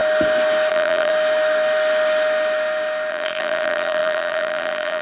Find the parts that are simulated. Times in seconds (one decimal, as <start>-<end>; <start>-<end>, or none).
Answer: 0.7-1.1; 3.1-5.0